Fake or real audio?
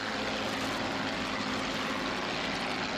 real